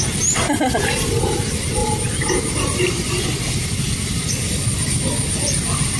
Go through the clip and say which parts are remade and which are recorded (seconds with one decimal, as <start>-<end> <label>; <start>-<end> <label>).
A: 0.0-1.8 recorded; 1.8-3.2 remade; 3.2-6.0 recorded